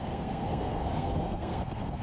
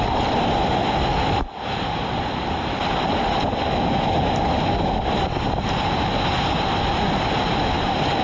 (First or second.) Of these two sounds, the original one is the second